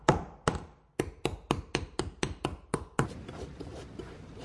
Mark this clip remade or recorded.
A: remade